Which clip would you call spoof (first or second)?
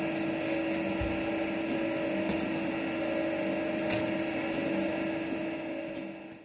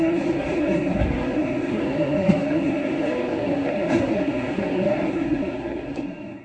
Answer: second